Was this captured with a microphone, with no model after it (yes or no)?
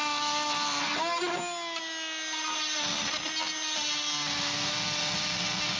yes